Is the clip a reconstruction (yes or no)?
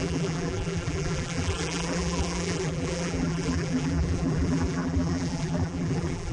yes